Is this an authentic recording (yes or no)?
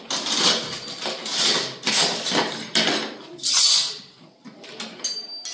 yes